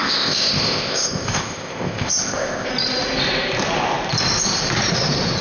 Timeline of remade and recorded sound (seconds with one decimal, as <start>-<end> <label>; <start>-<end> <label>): 0.0-2.7 remade; 2.7-5.4 recorded